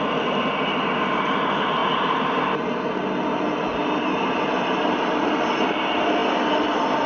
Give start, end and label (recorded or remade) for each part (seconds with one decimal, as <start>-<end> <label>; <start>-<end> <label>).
0.0-7.1 recorded